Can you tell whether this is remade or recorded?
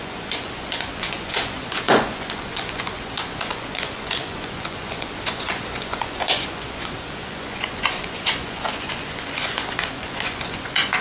remade